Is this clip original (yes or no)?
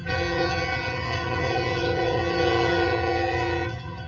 no